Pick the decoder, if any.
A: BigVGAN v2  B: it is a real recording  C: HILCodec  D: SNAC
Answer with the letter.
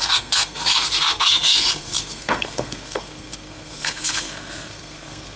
D